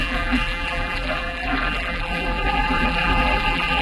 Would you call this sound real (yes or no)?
no